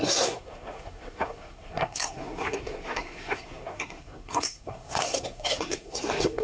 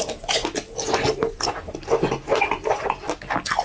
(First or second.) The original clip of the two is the second